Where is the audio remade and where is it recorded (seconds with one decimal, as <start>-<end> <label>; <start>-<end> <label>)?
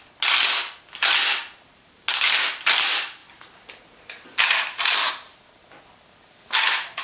0.0-7.0 recorded